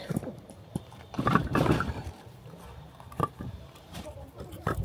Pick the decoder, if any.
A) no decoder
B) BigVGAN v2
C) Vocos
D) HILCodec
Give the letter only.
B